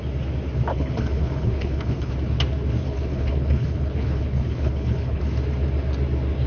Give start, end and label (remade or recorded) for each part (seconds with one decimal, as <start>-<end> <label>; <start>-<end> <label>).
0.0-0.7 recorded; 0.7-2.1 remade; 2.1-2.8 recorded; 2.8-5.2 remade; 5.2-6.5 recorded